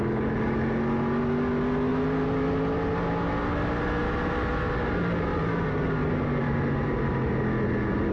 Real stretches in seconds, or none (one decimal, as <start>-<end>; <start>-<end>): 0.0-5.3; 7.4-8.1